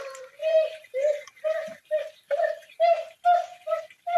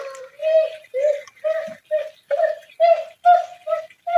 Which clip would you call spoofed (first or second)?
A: first